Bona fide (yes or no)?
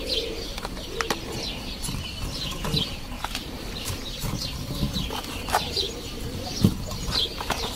yes